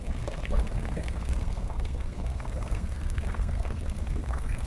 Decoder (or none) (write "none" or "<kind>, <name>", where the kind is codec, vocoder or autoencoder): codec, SNAC